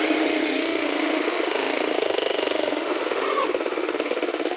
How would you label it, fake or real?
fake